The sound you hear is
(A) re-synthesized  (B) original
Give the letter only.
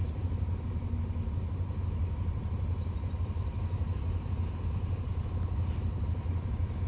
B